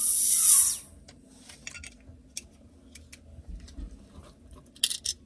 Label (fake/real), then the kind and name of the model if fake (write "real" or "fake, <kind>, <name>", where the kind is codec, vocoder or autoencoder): real